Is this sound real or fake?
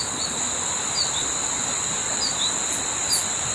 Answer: real